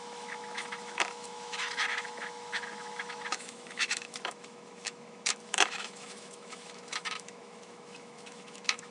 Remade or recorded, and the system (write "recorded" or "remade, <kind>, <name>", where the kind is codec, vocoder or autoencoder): remade, autoencoder, DAC-VAE